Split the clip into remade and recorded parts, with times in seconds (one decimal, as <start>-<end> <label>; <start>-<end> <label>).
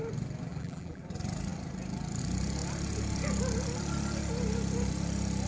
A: 0.0-0.5 recorded; 0.5-1.0 remade; 1.0-5.5 recorded